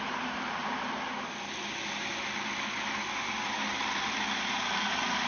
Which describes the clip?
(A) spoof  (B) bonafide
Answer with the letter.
B